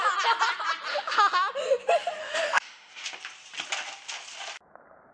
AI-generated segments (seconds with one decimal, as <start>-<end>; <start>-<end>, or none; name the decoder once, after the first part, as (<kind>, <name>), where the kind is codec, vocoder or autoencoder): 0.9-1.5 (autoencoder, DAC-VAE); 2.2-2.9